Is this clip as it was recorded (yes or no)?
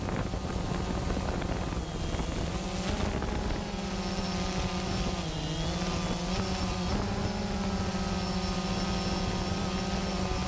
yes